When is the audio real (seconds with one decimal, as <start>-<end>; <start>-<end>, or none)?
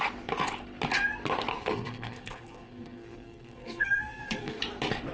0.0-1.5; 4.6-5.1